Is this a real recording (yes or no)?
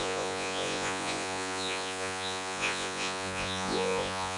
no